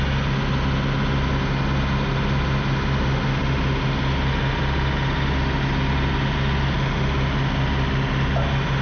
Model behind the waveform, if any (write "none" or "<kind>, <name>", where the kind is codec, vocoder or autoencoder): none